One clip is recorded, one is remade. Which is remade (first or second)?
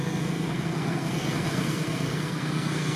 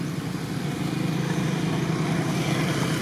first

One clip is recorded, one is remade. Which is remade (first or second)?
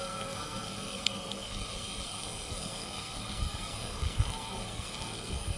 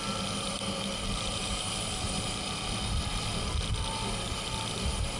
first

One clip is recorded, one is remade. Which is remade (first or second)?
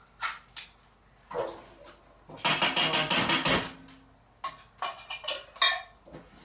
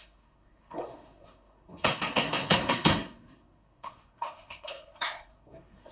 second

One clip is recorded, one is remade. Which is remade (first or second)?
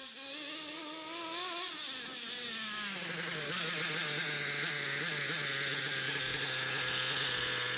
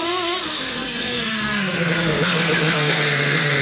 second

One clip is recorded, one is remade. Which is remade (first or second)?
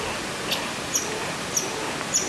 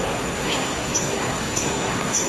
second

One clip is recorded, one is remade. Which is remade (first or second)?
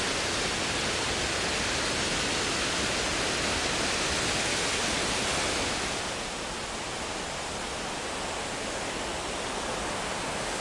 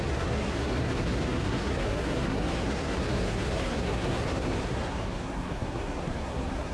second